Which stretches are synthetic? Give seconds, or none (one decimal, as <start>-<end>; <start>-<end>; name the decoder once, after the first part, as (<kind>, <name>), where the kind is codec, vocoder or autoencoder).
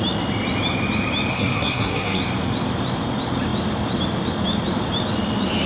1.3-2.2 (codec, SNAC)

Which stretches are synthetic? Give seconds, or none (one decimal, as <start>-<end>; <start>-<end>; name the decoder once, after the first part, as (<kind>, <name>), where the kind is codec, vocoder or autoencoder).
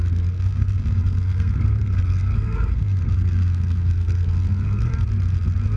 0.0-4.9 (codec, SNAC)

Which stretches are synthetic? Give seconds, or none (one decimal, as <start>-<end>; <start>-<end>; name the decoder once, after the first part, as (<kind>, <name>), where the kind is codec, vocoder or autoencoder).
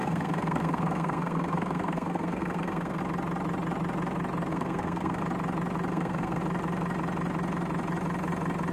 0.0-3.0 (codec, SNAC); 4.5-5.2; 5.9-6.4